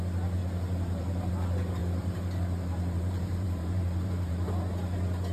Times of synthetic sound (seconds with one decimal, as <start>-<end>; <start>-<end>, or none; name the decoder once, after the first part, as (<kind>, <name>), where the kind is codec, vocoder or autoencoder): 0.4-1.3 (vocoder, BigVGAN v2); 1.8-4.5